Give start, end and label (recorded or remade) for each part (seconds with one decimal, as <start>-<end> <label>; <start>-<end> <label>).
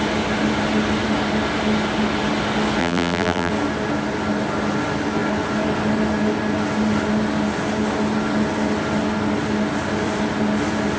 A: 0.0-2.8 recorded; 2.8-3.5 remade; 3.5-11.0 recorded